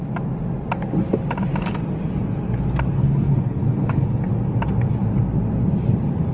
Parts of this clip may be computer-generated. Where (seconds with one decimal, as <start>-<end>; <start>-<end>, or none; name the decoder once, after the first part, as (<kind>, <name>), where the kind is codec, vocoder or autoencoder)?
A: 3.0-4.2 (codec, HILCodec)